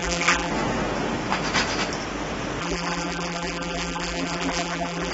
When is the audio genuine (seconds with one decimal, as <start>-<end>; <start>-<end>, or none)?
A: 0.5-2.6